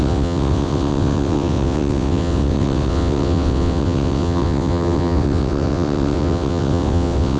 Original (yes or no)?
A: no